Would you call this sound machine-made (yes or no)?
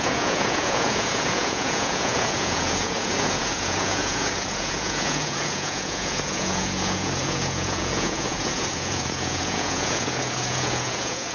yes